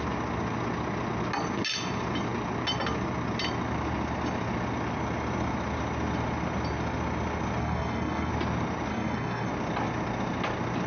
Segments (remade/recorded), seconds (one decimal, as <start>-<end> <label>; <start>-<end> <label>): 0.0-7.6 recorded; 7.6-8.3 remade; 8.3-8.9 recorded; 8.9-9.5 remade; 9.5-10.9 recorded